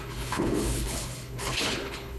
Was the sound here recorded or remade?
remade